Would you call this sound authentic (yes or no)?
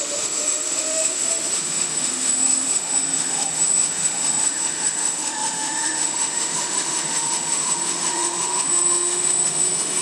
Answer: no